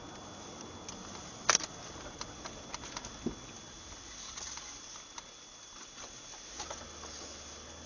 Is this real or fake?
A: real